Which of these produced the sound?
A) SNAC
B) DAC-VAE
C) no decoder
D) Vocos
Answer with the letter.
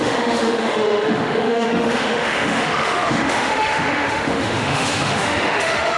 B